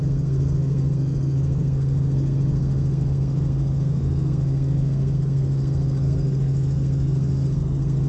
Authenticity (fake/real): fake